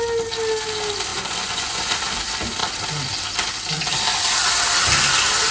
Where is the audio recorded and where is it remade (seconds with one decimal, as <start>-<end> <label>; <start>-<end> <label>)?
0.0-1.1 recorded; 1.1-2.0 remade; 2.0-5.5 recorded